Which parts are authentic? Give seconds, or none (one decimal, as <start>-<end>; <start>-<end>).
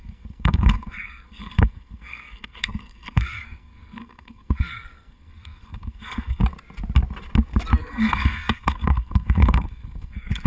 6.4-7.8